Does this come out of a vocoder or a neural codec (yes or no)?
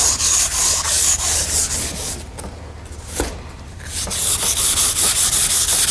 no